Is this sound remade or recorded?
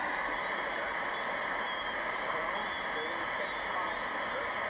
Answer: recorded